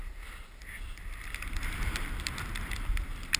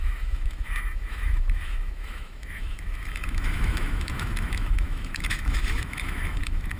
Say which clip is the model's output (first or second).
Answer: second